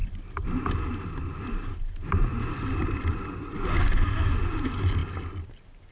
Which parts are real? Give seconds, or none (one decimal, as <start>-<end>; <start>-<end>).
3.5-5.9